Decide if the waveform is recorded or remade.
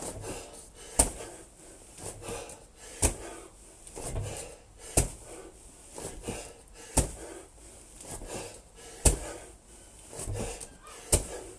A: recorded